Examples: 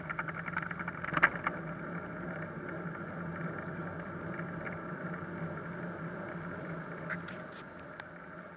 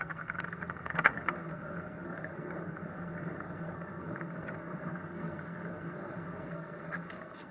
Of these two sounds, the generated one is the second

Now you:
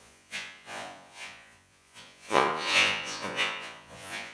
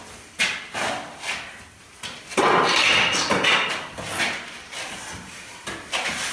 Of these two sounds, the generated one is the first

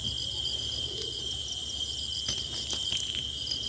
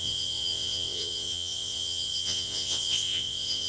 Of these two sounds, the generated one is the second